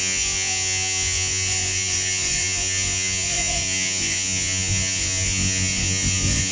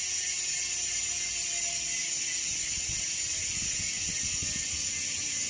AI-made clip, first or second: first